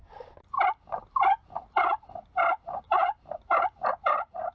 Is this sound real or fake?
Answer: real